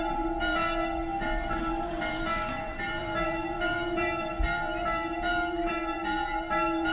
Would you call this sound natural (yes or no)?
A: no